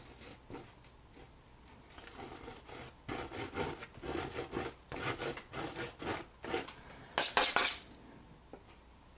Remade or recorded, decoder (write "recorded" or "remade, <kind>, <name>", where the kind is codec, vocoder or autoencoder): recorded